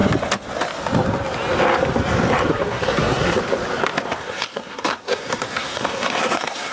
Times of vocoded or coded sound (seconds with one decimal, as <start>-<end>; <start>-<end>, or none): 2.5-3.4; 4.2-6.7